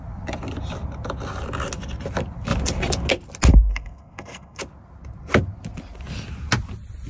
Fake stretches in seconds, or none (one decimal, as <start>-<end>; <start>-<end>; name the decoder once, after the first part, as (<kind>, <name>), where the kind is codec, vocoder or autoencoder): 3.5-4.6 (codec, SNAC)